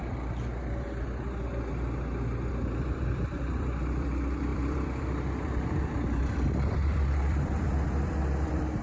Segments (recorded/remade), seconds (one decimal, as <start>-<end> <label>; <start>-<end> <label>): 0.0-2.5 recorded; 2.5-8.8 remade